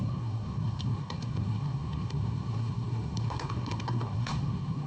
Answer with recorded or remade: remade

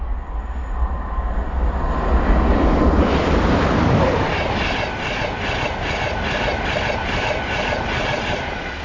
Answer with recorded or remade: recorded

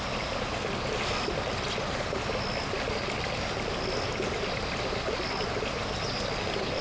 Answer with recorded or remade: recorded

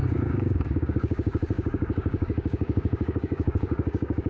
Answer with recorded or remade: remade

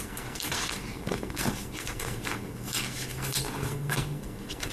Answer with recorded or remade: remade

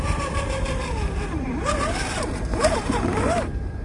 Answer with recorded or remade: remade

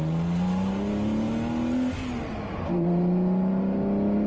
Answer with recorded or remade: recorded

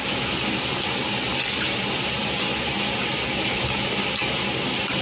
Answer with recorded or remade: recorded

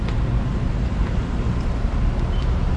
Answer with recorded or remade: recorded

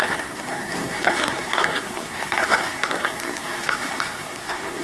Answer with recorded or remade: remade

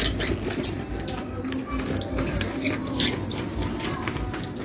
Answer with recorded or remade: recorded